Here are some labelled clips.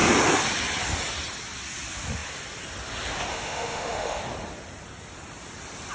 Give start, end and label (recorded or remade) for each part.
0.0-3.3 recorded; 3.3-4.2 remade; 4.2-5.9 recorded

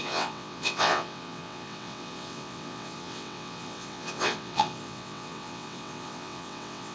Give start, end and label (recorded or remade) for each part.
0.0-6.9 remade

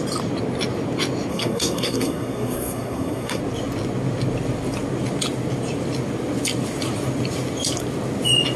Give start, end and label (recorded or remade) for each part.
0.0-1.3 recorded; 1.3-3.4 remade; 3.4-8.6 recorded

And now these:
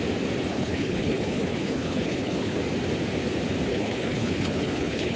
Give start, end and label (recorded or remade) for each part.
0.0-0.5 recorded; 0.5-2.6 remade; 2.6-3.7 recorded; 3.7-5.2 remade

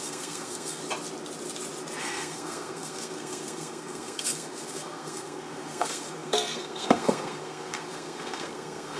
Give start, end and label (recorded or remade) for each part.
0.0-0.8 remade; 0.8-2.0 recorded; 2.0-9.0 remade

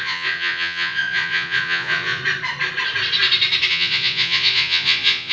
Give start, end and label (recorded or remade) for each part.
0.0-2.2 remade; 2.2-3.7 recorded; 3.7-5.3 remade

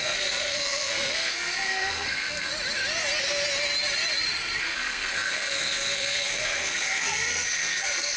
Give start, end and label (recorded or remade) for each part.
0.0-2.5 remade; 2.5-4.6 recorded; 4.6-8.2 remade

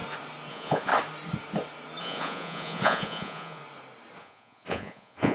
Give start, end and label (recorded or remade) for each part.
0.0-0.5 recorded; 0.5-0.9 remade; 0.9-2.0 recorded; 2.0-3.6 remade; 3.6-4.2 recorded; 4.2-5.3 remade